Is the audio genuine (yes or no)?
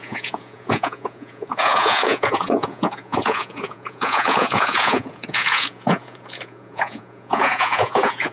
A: no